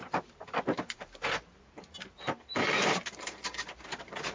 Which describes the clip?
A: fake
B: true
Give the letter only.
A